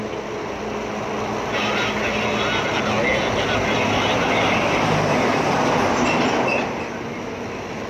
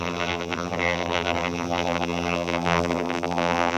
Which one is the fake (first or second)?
second